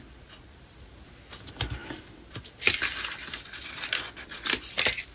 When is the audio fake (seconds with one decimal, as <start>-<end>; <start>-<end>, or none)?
none